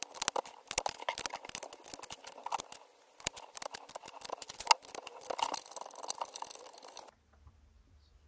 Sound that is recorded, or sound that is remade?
recorded